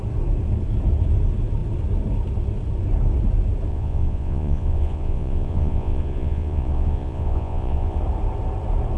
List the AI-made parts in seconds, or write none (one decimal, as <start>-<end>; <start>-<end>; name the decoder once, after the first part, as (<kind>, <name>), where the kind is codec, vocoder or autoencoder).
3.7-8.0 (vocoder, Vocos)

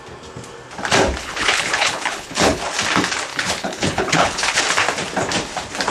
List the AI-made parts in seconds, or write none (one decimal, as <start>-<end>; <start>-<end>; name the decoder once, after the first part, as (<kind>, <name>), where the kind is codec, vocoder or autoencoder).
1.2-2.6 (codec, HILCodec); 3.3-4.6

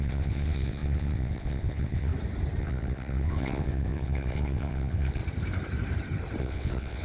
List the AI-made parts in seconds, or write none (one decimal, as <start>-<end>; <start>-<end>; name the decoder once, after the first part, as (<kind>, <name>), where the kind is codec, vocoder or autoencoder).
0.0-2.1 (vocoder, WaveNeXt); 2.6-5.2; 6.4-7.0